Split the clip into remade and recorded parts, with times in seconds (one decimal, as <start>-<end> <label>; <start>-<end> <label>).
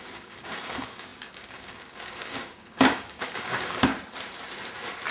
0.0-3.9 remade; 3.9-5.1 recorded